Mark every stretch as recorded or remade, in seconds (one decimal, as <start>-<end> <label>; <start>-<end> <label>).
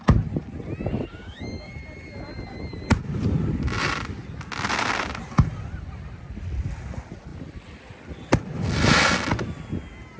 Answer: 0.0-1.1 recorded; 1.1-1.7 remade; 1.7-10.2 recorded